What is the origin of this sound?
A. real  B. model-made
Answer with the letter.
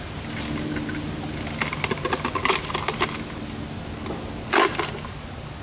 A